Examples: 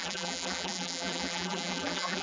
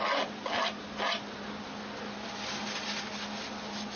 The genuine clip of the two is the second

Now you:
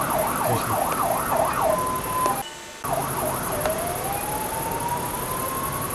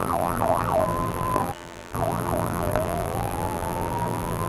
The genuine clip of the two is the first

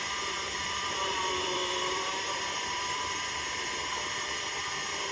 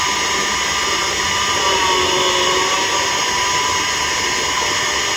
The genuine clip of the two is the second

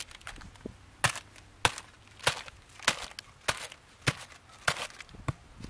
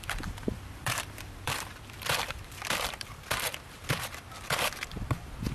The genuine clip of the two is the first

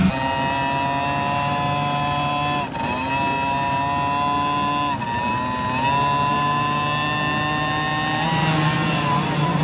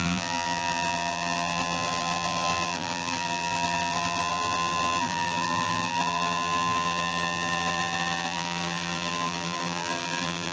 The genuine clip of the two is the first